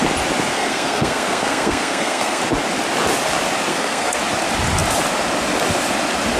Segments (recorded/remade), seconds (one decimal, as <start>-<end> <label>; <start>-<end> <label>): 0.0-0.5 recorded; 0.5-2.4 remade; 2.4-3.7 recorded; 3.7-4.2 remade; 4.2-6.4 recorded